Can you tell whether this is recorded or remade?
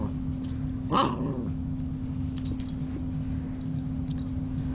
recorded